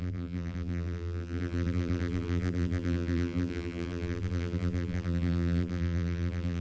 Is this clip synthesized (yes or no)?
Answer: yes